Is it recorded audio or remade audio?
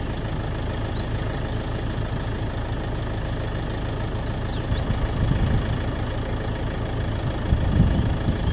recorded